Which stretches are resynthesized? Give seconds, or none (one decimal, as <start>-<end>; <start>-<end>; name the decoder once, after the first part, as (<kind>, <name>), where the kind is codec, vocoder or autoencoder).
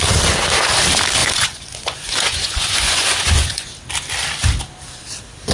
1.2-3.7 (vocoder, Vocos)